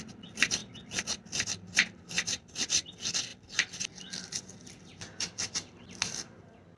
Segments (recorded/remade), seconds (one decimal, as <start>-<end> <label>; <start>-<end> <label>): 0.0-6.8 recorded